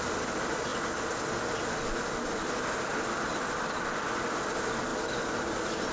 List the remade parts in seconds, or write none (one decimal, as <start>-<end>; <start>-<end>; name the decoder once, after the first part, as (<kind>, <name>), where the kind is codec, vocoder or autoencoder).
none